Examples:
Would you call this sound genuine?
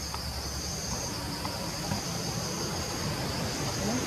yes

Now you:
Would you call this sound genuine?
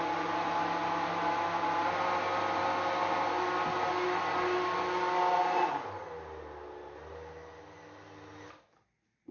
yes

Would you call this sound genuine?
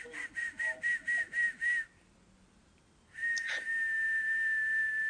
yes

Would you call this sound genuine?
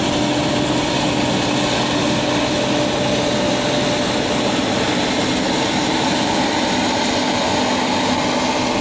yes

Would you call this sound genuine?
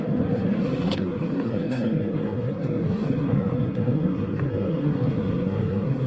no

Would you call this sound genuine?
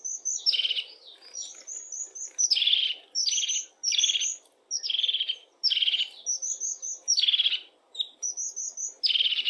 yes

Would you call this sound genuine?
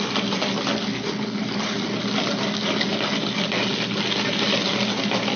yes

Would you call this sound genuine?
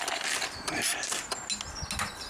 yes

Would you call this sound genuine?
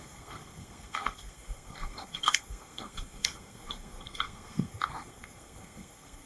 no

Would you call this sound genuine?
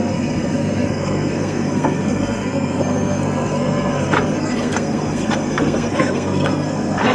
no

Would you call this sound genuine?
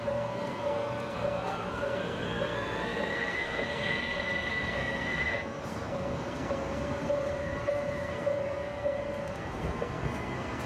no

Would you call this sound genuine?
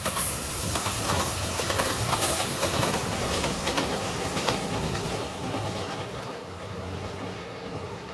no